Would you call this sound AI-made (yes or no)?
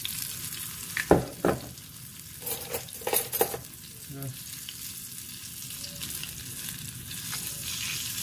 no